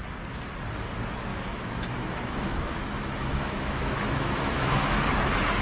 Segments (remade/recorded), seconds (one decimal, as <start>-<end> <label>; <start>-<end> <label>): 0.0-1.3 recorded; 1.3-4.7 remade; 4.7-5.6 recorded

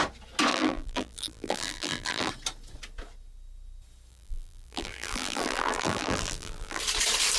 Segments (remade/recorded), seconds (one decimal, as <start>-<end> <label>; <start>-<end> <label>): 0.0-0.5 recorded; 0.5-2.3 remade; 2.3-4.1 recorded; 4.1-6.8 remade; 6.8-7.4 recorded

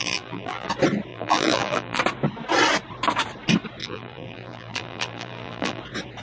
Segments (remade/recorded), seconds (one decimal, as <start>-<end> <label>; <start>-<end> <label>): 0.0-0.7 remade; 0.7-1.1 recorded; 1.1-2.0 remade; 2.0-3.8 recorded; 3.8-5.8 remade; 5.8-6.2 recorded

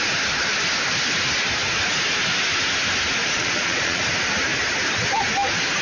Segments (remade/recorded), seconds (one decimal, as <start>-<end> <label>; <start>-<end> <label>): 0.0-3.2 recorded; 3.2-4.0 remade; 4.0-5.8 recorded

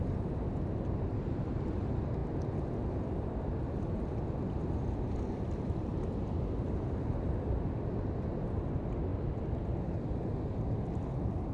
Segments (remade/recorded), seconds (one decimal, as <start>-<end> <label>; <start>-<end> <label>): 0.0-11.5 recorded

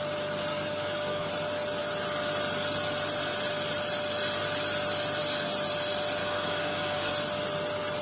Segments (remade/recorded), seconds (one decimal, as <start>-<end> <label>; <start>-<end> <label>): 0.0-0.5 recorded; 0.5-1.3 remade; 1.3-6.2 recorded; 6.2-7.1 remade; 7.1-8.0 recorded

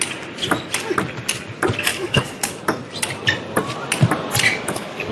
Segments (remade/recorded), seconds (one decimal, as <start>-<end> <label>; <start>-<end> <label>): 0.0-1.9 recorded; 1.9-2.6 remade; 2.6-4.5 recorded; 4.5-5.1 remade